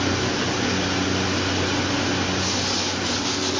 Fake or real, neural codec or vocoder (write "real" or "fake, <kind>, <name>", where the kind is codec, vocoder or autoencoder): real